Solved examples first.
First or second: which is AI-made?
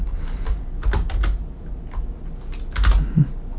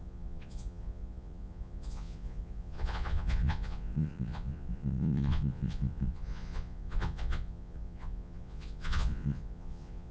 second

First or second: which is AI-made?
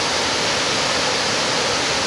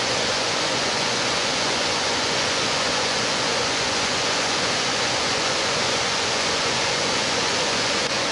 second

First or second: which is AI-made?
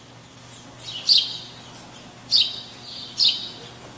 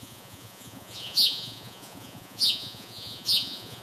second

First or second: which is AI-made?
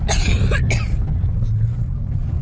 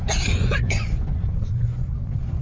second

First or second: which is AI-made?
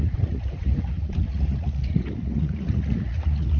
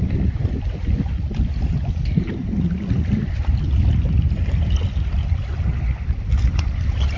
first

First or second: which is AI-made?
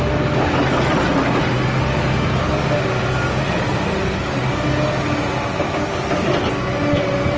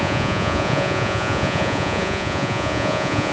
second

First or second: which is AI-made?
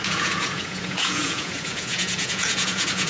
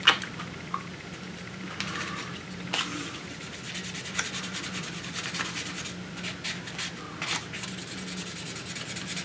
first